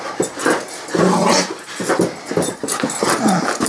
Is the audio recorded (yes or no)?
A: yes